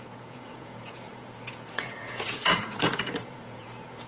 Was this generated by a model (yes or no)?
yes